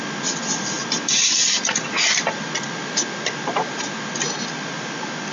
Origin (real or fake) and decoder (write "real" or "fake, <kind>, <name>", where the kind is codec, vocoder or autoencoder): fake, vocoder, BigVGAN v2